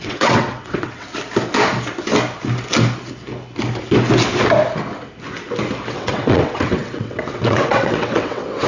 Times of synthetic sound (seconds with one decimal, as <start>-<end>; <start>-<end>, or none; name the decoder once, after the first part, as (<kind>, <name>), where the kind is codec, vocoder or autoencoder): 0.0-1.1 (vocoder, WaveNeXt); 5.9-8.7